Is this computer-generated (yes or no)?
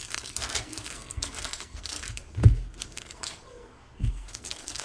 yes